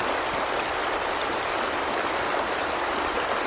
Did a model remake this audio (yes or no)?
no